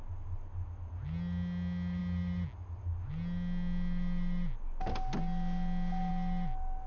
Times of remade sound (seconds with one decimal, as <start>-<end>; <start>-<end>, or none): none